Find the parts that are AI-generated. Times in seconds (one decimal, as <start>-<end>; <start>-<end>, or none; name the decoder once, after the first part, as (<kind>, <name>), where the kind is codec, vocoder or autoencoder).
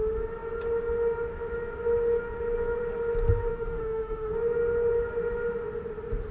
3.5-4.3 (autoencoder, DAC-VAE)